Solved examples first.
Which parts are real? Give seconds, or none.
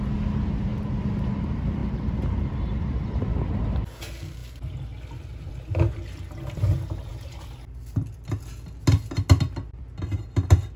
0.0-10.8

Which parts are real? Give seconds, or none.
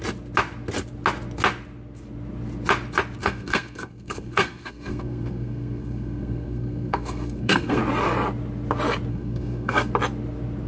0.0-3.2; 7.8-9.1; 9.9-10.7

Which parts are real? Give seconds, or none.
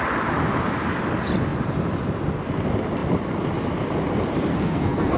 0.0-4.5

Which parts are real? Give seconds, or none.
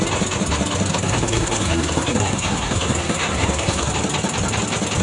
0.0-0.9; 3.9-5.0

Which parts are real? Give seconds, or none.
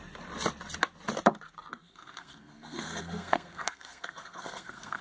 0.0-1.7